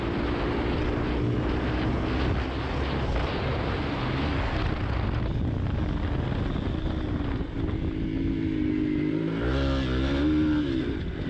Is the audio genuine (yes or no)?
yes